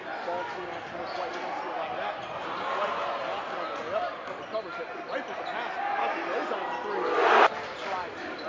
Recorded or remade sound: recorded